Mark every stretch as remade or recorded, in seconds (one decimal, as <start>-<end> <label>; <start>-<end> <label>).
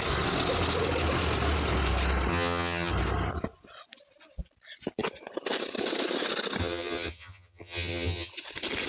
0.0-2.3 recorded; 2.3-2.9 remade; 2.9-6.6 recorded; 6.6-8.3 remade; 8.3-8.9 recorded